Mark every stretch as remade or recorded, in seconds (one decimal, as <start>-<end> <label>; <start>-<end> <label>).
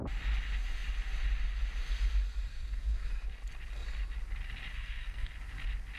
0.0-2.5 recorded; 2.5-3.1 remade; 3.1-4.7 recorded; 4.7-5.3 remade; 5.3-6.0 recorded